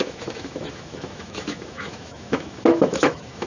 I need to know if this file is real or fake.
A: fake